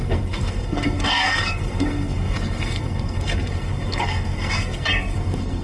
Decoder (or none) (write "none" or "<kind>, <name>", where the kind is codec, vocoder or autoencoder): codec, SNAC